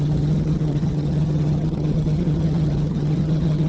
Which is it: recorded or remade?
remade